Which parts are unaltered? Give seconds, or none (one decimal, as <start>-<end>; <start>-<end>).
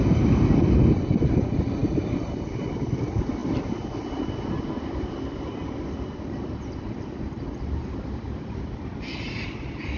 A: 0.0-10.0